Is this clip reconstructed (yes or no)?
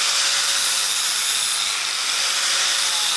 no